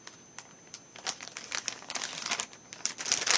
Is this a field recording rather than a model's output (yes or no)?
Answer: yes